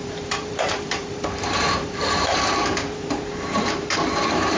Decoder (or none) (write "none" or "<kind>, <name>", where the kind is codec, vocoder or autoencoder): vocoder, BigVGAN v2